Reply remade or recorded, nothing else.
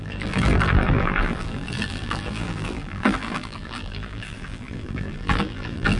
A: remade